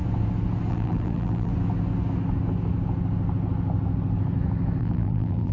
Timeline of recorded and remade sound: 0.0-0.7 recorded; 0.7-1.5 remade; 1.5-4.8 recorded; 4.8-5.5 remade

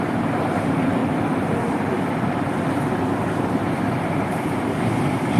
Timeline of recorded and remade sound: 0.0-1.0 remade; 1.0-2.9 recorded; 2.9-5.4 remade

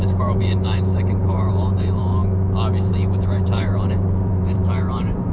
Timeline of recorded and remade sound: 0.0-2.2 remade; 2.2-2.9 recorded; 2.9-5.3 remade

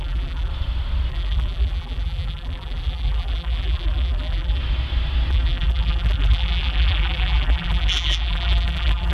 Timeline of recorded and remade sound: 0.0-0.5 remade; 0.5-1.1 recorded; 1.1-4.6 remade; 4.6-5.3 recorded; 5.3-9.1 remade

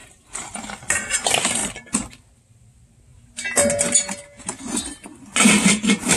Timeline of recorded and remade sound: 0.0-0.8 remade; 0.8-6.2 recorded

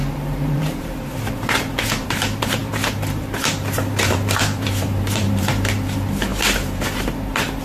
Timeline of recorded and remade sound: 0.0-7.6 remade